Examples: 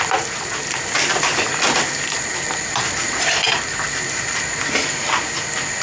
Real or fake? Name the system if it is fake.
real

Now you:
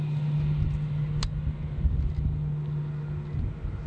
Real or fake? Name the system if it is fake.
real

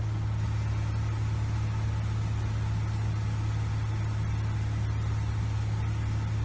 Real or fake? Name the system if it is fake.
real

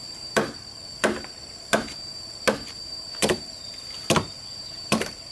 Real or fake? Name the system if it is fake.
fake, vocoder, BigVGAN v2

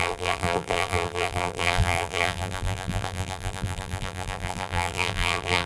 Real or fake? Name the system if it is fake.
fake, vocoder, BigVGAN v2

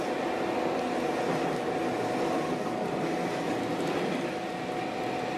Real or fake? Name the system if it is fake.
real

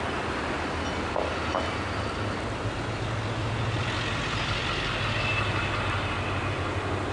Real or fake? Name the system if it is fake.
real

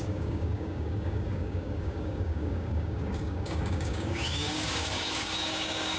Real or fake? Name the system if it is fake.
fake, codec, DAC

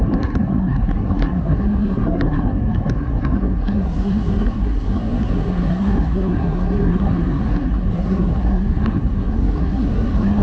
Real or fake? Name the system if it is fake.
fake, codec, SNAC